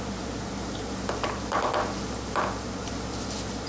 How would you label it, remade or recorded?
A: remade